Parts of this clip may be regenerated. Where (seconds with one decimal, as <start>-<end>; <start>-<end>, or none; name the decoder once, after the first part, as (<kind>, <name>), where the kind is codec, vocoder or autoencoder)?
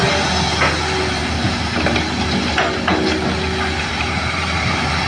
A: 3.9-4.4 (vocoder, BigVGAN v2)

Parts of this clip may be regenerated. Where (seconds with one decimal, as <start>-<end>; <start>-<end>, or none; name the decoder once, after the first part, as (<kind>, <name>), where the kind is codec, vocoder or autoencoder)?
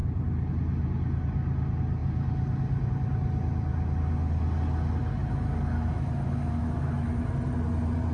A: 5.2-7.3 (autoencoder, DAC-VAE)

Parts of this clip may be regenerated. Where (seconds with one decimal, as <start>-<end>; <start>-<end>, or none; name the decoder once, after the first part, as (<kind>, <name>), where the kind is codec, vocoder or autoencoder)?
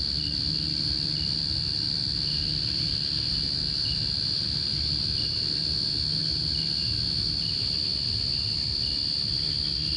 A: none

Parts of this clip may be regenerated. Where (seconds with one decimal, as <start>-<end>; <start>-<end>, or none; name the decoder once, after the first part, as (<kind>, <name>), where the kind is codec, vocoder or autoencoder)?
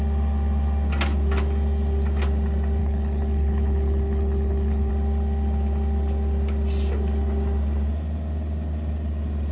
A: 2.8-4.9 (codec, HILCodec)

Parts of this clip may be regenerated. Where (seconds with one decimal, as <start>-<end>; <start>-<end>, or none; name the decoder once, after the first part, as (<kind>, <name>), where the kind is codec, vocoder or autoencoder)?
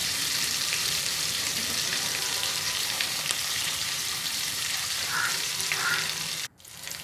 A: 0.0-1.5 (vocoder, BigVGAN v2); 1.9-5.5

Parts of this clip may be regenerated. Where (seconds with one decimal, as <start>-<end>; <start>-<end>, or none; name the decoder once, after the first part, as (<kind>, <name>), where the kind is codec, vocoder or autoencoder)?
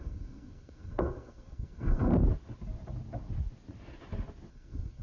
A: 0.0-2.1 (codec, SNAC); 4.5-5.0